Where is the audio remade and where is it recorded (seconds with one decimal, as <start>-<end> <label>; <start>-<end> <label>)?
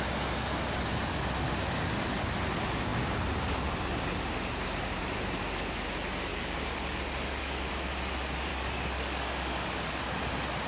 0.0-6.3 recorded; 6.3-7.7 remade; 7.7-8.5 recorded; 8.5-10.0 remade; 10.0-10.7 recorded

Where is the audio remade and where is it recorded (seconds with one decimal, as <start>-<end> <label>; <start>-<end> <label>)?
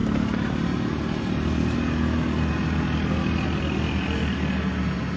0.0-5.2 recorded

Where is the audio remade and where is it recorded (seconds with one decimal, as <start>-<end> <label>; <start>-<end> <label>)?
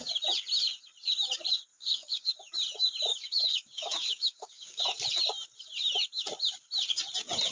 0.0-1.7 recorded; 1.7-2.3 remade; 2.3-3.1 recorded; 3.1-4.8 remade; 4.8-7.5 recorded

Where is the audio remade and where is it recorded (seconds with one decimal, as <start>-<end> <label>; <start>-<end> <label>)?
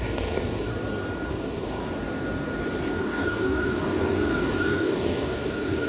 0.0-0.7 remade; 0.7-1.3 recorded; 1.3-1.8 remade; 1.8-3.0 recorded; 3.0-5.9 remade